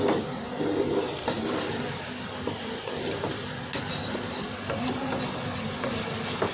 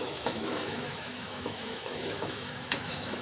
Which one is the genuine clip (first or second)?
first